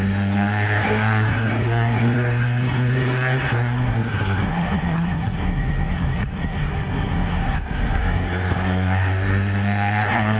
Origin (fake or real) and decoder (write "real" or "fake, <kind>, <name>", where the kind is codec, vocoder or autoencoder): fake, codec, SNAC